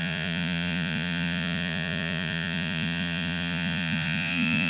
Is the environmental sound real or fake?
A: fake